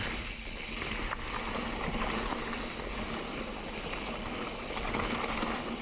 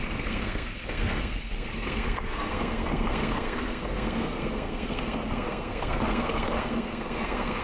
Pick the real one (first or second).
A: first